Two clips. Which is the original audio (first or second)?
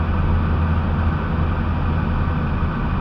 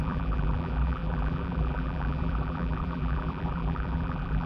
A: first